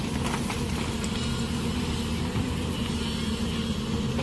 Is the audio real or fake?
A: real